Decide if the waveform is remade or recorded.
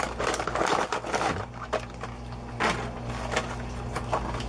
recorded